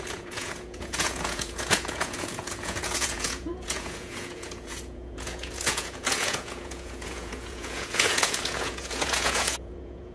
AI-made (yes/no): yes